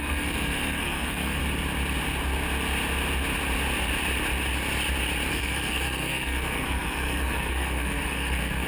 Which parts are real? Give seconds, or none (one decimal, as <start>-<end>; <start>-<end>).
1.4-5.3